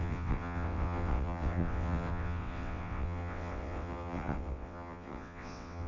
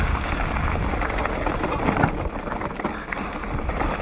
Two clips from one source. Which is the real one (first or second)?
second